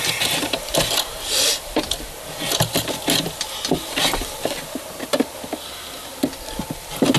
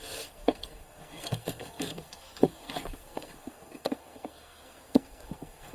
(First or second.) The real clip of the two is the first